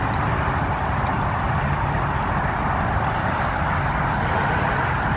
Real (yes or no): yes